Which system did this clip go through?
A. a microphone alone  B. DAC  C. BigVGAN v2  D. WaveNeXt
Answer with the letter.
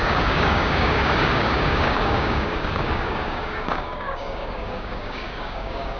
B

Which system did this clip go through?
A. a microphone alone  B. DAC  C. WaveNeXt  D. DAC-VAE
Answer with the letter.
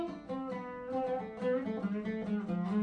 A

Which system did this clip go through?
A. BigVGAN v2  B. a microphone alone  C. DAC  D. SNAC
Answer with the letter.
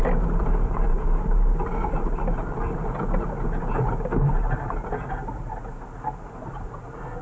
B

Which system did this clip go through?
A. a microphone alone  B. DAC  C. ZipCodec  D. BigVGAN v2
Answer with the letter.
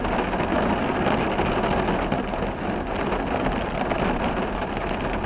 A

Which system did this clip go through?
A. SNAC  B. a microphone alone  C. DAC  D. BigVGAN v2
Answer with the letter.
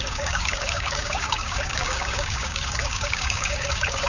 C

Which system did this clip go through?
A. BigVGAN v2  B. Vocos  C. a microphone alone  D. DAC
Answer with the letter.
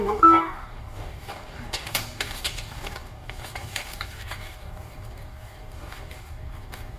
D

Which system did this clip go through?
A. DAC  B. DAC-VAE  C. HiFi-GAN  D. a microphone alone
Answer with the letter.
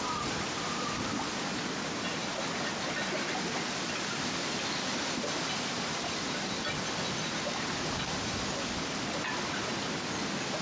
D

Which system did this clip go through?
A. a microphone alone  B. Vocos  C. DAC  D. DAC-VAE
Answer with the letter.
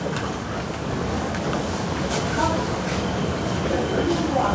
C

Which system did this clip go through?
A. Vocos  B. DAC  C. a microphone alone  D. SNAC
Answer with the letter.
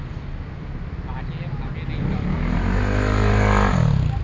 C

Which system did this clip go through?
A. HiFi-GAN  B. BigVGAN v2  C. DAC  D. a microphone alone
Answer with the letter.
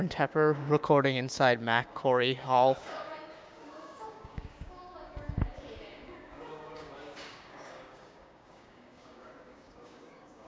C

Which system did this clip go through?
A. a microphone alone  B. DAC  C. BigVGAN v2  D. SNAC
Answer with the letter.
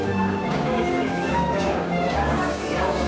B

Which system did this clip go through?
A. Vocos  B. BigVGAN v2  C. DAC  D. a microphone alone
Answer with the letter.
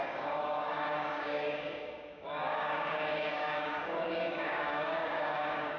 C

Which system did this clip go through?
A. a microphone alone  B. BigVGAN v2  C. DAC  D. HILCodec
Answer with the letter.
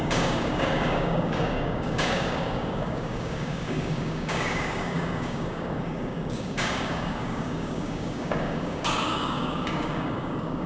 C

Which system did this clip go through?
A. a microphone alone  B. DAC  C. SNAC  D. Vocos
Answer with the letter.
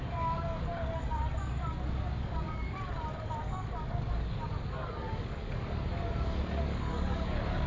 B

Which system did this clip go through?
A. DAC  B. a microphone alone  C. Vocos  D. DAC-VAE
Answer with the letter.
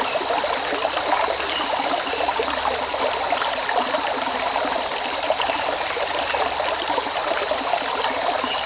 B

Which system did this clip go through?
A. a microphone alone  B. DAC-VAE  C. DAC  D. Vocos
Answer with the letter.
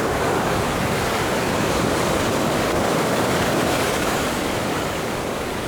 C